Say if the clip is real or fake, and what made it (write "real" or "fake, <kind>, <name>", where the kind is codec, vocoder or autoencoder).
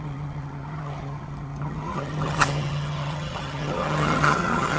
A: fake, vocoder, HiFi-GAN